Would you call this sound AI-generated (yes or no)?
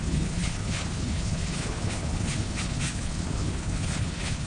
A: yes